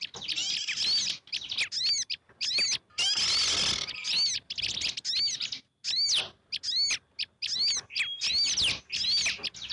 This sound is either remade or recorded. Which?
recorded